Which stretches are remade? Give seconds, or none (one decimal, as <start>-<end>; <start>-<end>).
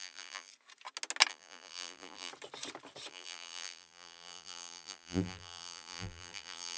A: 0.0-0.5; 1.3-2.3; 3.1-6.8